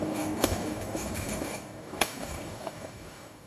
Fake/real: fake